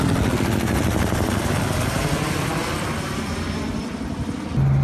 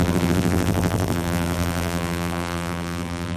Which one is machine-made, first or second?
second